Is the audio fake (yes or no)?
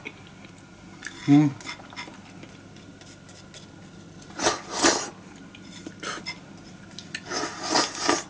no